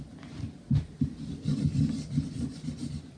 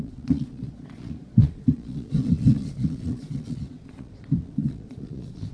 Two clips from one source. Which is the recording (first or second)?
first